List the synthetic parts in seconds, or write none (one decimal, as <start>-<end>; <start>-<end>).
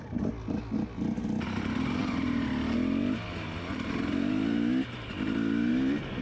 none